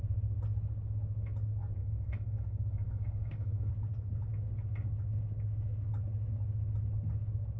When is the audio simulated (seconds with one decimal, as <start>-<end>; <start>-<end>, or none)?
1.8-3.7